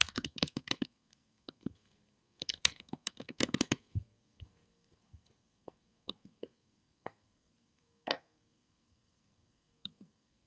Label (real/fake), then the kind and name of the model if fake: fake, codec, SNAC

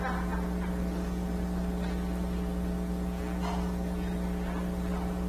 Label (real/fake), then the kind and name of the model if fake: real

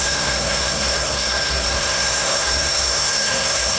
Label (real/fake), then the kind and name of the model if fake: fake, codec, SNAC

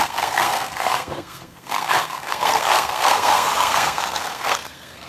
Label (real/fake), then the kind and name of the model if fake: fake, codec, SNAC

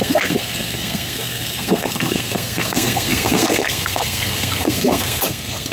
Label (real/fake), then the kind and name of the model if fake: fake, codec, SNAC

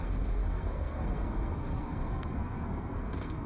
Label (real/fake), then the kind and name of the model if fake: fake, codec, SNAC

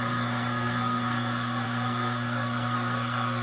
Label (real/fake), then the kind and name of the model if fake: fake, codec, SNAC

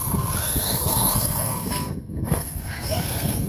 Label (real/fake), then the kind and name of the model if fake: fake, codec, SNAC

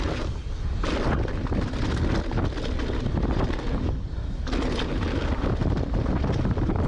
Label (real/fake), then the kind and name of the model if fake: real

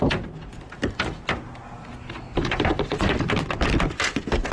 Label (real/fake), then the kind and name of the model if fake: real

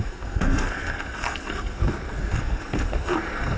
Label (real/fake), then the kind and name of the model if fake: fake, codec, SNAC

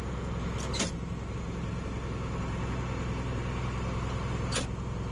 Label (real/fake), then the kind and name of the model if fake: real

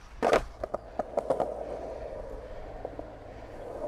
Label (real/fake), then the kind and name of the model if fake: real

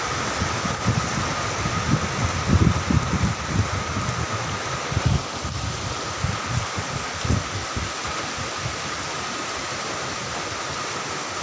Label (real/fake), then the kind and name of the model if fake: real